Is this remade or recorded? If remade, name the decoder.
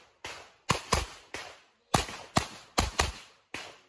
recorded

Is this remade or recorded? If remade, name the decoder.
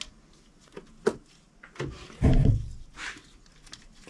recorded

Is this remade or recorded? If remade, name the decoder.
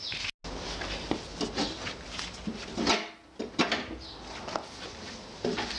recorded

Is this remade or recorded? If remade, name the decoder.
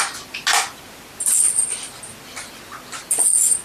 recorded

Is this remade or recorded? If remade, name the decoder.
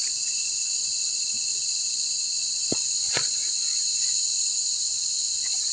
recorded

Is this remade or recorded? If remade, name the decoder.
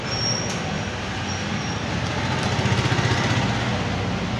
recorded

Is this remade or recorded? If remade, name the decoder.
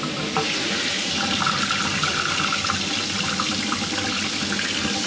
recorded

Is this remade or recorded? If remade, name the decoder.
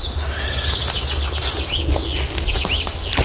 recorded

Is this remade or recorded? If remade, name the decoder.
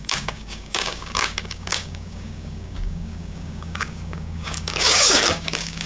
remade, codec, DAC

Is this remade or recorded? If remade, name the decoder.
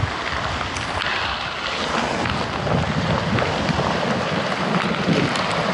recorded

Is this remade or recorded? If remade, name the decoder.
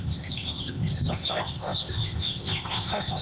remade, codec, ZipCodec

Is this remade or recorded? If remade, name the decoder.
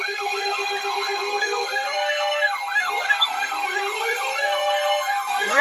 remade, codec, SNAC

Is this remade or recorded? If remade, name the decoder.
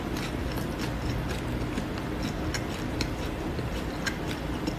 recorded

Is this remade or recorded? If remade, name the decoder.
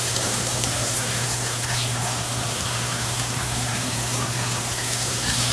remade, codec, SNAC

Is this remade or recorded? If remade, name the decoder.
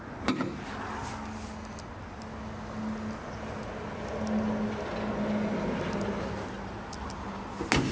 recorded